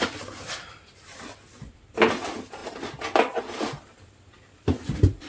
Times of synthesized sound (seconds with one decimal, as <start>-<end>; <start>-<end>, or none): none